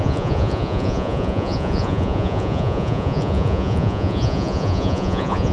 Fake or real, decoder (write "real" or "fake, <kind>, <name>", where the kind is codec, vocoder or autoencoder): fake, vocoder, Vocos